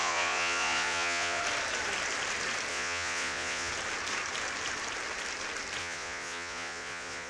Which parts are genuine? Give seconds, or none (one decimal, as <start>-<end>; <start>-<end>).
1.4-2.7; 3.7-5.8